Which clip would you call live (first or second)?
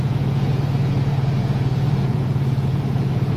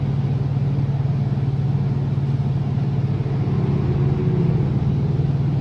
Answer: second